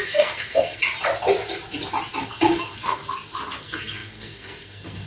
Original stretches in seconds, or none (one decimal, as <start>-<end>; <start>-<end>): 0.8-2.2; 3.0-3.6